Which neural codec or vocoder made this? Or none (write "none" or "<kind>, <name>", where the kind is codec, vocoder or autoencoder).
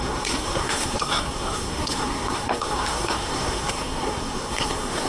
codec, SNAC